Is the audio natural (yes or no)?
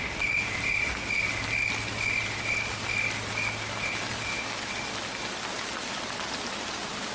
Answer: yes